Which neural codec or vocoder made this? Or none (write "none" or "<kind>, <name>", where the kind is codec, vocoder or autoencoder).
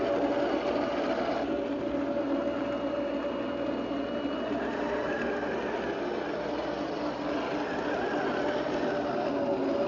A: none